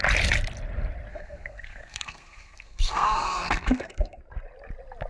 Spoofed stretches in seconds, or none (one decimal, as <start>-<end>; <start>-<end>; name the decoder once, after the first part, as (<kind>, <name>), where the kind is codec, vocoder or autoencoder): 1.1-4.2 (codec, SNAC)